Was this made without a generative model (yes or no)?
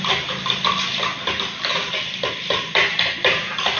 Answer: yes